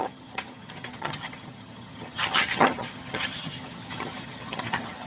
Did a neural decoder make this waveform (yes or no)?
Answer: yes